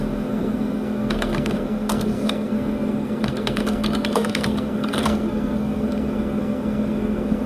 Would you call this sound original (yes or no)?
no